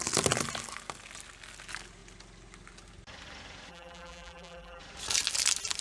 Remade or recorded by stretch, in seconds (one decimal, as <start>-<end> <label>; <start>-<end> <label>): 0.0-3.7 recorded; 3.7-4.8 remade; 4.8-5.8 recorded